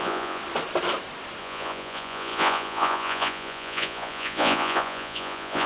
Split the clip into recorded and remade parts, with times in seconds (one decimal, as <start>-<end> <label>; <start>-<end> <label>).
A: 0.0-0.4 remade; 0.4-1.4 recorded; 1.4-5.7 remade